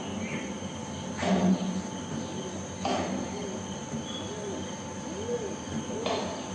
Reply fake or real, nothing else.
real